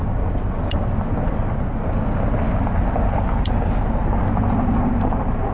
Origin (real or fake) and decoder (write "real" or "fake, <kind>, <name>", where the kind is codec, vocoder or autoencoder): real